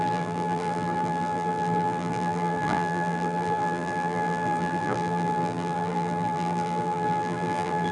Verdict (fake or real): fake